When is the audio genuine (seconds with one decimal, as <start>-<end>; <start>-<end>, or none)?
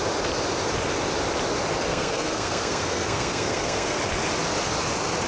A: 0.0-1.9; 4.0-5.3